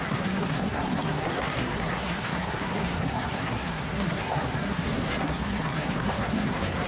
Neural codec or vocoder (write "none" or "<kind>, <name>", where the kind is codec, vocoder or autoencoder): codec, SNAC